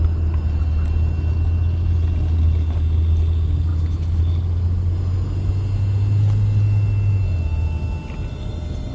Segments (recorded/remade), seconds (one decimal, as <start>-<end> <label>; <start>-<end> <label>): 0.0-8.9 recorded